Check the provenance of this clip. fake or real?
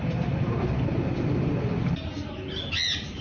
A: real